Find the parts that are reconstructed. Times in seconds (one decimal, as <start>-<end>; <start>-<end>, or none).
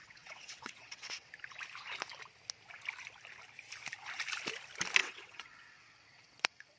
0.0-1.3; 5.0-6.8